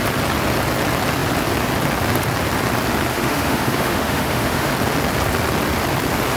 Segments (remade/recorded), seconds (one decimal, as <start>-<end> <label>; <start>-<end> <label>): 0.0-3.1 recorded; 3.1-4.7 remade; 4.7-6.4 recorded